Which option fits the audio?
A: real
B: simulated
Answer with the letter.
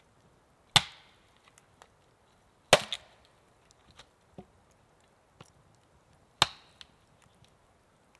A